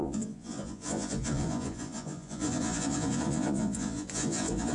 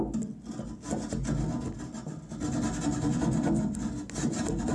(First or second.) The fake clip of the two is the first